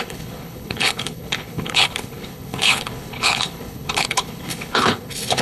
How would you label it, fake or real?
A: fake